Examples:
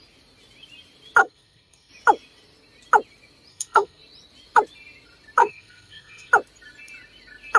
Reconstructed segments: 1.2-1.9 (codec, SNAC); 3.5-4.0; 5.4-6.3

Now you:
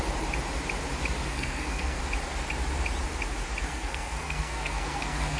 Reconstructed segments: 1.3-2.0 (codec, SNAC); 3.6-5.4

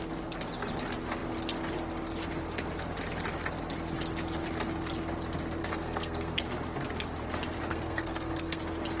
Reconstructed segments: 5.6-6.4 (codec, SNAC); 7.7-8.6